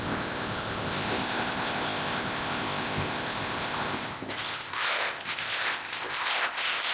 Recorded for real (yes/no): no